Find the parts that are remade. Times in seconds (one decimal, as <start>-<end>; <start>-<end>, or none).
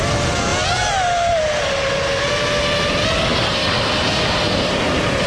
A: none